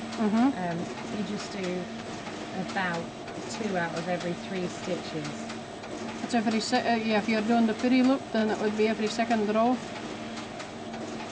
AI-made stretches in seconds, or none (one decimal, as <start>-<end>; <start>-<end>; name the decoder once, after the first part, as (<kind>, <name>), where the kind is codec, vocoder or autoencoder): none